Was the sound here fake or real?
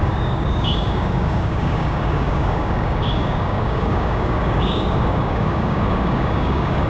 fake